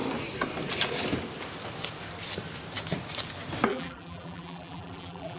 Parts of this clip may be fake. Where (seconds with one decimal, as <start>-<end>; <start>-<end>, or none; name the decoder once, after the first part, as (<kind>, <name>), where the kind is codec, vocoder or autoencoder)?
3.7-5.4 (vocoder, BigVGAN v2)